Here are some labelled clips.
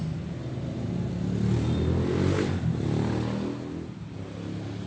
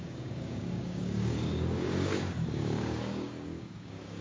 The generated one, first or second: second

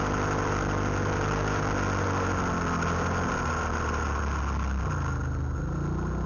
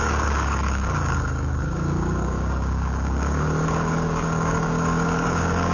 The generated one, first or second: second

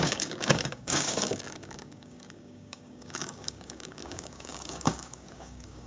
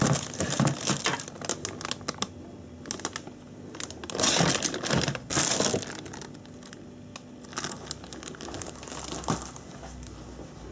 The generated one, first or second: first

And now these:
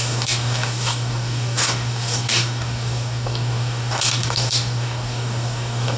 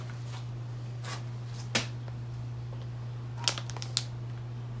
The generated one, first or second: first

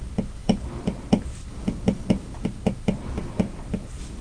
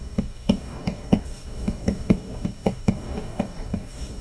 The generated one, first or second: second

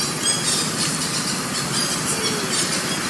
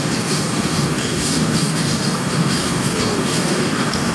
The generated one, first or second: second